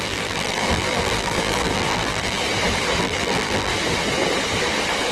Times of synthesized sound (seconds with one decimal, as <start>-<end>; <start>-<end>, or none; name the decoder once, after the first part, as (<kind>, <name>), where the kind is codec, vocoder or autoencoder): 0.0-2.4 (vocoder, BigVGAN v2); 3.0-3.7

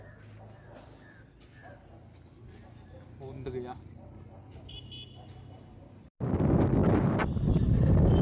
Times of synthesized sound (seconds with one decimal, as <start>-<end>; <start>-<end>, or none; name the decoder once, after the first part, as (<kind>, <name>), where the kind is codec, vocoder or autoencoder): none